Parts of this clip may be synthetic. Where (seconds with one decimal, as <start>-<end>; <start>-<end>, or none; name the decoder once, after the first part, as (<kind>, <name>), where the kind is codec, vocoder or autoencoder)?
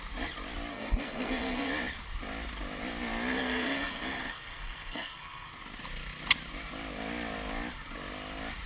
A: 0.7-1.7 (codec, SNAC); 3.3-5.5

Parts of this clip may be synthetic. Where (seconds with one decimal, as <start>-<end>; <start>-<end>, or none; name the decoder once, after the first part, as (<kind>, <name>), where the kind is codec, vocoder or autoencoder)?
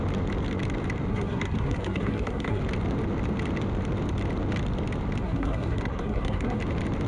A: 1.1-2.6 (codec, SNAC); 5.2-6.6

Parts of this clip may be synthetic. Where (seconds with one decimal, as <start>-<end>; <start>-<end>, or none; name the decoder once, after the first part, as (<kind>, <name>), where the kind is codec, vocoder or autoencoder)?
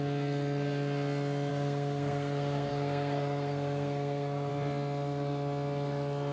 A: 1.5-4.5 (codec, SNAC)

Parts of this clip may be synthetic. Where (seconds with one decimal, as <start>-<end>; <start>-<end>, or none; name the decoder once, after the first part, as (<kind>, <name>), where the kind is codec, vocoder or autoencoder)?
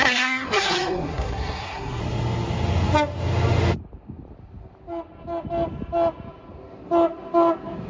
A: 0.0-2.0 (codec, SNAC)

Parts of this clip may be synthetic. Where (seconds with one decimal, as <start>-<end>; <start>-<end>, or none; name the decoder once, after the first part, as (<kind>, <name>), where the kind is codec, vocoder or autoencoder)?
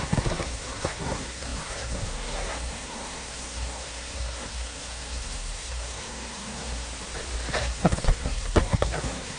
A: 0.0-6.9 (codec, SNAC); 7.6-9.4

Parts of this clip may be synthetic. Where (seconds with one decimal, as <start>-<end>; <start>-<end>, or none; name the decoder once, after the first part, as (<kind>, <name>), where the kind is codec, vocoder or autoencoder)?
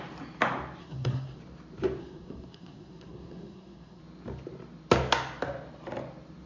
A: 0.8-1.4 (codec, SNAC); 2.0-4.0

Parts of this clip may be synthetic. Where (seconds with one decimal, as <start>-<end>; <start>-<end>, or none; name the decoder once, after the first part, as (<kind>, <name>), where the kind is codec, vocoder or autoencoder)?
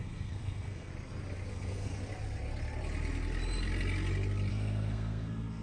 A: 0.0-0.9 (codec, SNAC); 1.5-1.9; 4.5-5.6